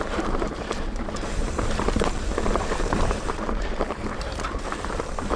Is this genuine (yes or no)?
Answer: no